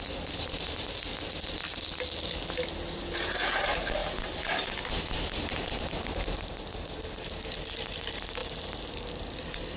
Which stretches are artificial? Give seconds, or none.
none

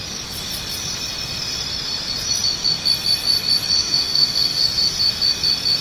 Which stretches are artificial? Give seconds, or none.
3.8-4.6 (autoencoder, DAC-VAE)

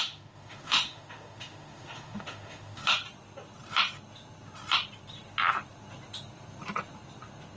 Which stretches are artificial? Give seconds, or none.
0.0-2.8 (autoencoder, DAC-VAE)

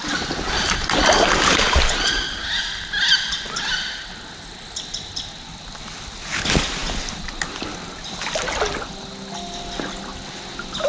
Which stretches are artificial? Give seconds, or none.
none

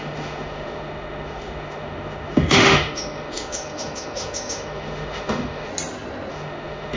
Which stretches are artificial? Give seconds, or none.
0.0-5.7 (autoencoder, DAC-VAE); 6.3-7.0

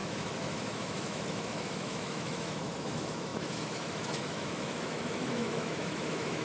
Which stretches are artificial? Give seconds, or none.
0.0-6.4 (autoencoder, DAC-VAE)

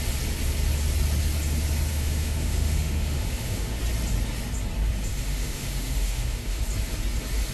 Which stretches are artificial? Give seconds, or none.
1.9-3.8 (autoencoder, DAC-VAE); 5.1-6.6

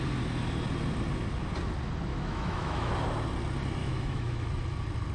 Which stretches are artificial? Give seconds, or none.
2.1-2.9 (autoencoder, DAC-VAE); 3.8-4.5